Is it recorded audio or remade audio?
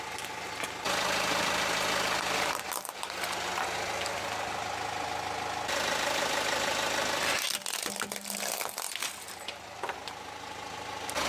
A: recorded